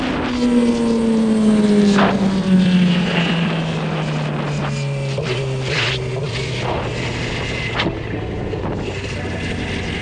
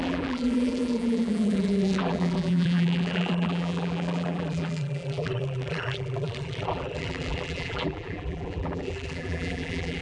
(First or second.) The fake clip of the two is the second